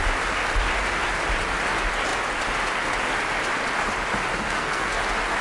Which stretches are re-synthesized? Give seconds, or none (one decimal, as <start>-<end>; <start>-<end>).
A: 4.3-5.0